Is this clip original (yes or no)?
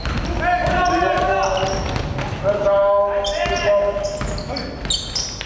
yes